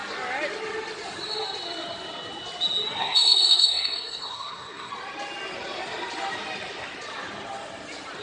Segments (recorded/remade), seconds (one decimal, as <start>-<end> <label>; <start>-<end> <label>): 0.0-3.0 recorded; 3.0-4.9 remade; 4.9-8.2 recorded